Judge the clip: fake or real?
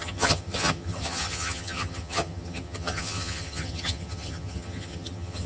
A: fake